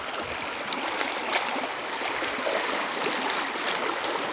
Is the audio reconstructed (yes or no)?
no